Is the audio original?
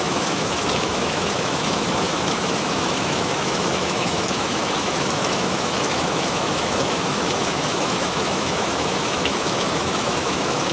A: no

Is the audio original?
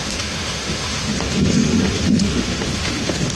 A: no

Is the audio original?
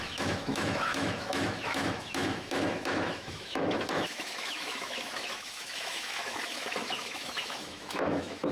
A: no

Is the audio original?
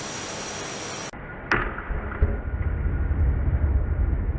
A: yes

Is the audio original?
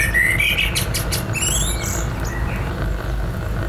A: yes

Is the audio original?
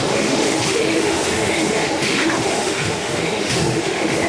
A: no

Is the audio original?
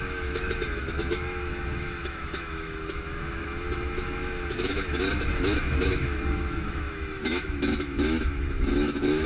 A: no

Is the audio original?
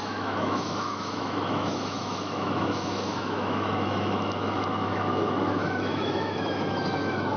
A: no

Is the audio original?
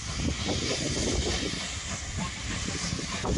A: yes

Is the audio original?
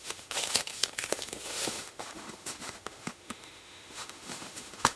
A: no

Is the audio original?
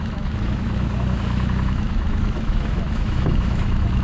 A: no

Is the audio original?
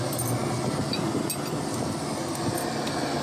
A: yes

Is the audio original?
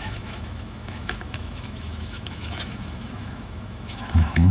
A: no